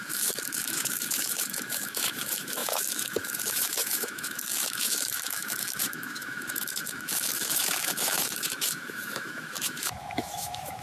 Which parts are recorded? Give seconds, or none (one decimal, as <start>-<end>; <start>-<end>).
none